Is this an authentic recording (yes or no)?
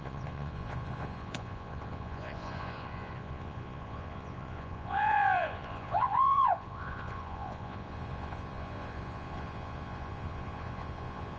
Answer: no